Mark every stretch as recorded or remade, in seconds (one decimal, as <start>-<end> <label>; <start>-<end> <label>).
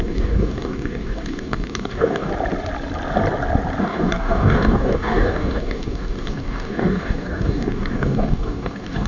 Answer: 0.0-2.3 remade; 2.3-3.8 recorded; 3.8-9.1 remade